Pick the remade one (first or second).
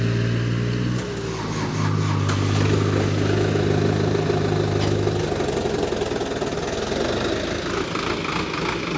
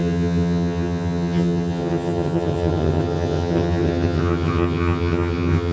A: second